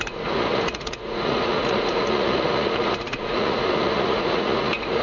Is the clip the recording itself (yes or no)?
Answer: no